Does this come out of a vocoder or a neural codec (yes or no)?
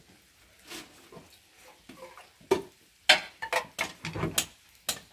no